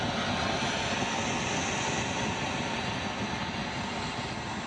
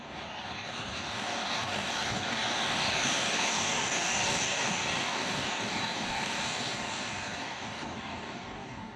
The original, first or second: first